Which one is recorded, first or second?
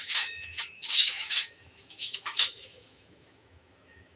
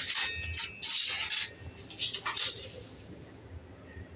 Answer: second